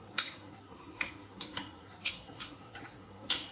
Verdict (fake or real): fake